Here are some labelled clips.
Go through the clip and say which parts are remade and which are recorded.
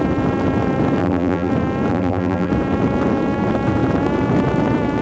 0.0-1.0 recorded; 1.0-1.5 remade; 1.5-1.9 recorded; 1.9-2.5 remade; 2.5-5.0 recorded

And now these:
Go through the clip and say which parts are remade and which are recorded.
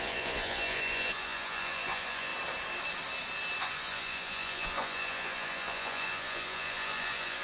0.0-2.3 remade; 2.3-3.6 recorded; 3.6-7.4 remade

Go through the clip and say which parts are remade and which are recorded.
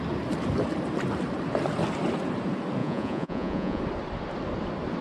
0.0-2.8 recorded; 2.8-3.8 remade; 3.8-5.0 recorded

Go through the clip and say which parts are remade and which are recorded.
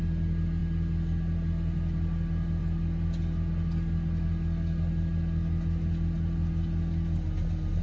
0.0-7.8 recorded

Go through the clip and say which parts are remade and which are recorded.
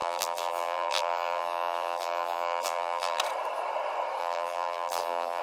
0.0-3.2 remade; 3.2-4.2 recorded; 4.2-5.4 remade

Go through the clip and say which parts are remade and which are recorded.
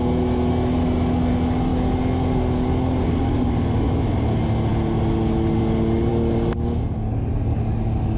0.0-8.2 recorded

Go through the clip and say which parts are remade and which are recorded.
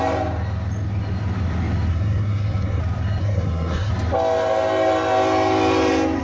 0.0-1.9 recorded; 1.9-2.8 remade; 2.8-3.2 recorded; 3.2-3.9 remade; 3.9-6.2 recorded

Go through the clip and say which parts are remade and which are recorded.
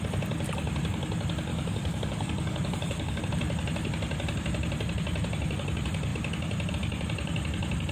0.0-1.5 recorded; 1.5-3.2 remade; 3.2-7.9 recorded